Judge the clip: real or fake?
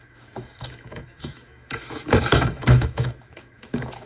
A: fake